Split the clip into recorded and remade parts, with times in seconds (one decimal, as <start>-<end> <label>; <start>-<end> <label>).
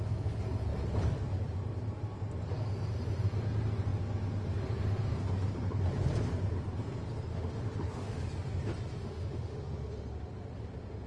0.0-7.3 recorded; 7.3-8.2 remade; 8.2-9.0 recorded; 9.0-9.6 remade; 9.6-11.1 recorded